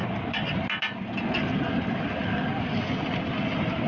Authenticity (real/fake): real